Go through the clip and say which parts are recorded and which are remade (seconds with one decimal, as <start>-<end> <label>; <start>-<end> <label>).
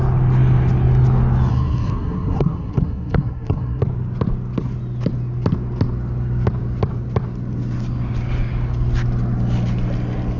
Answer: 0.0-1.5 recorded; 1.5-3.8 remade; 3.8-10.4 recorded